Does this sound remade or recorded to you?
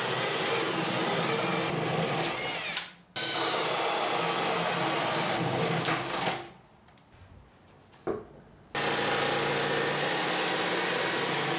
recorded